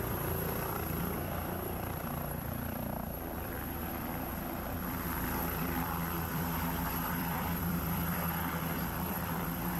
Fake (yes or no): yes